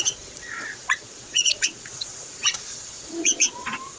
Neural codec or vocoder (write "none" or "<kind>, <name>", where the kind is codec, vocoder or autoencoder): vocoder, Vocos